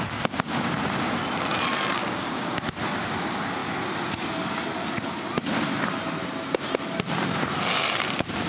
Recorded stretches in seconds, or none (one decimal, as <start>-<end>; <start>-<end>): 0.0-2.0; 2.6-8.5